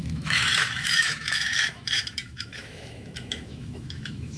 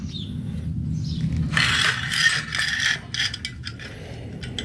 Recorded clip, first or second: second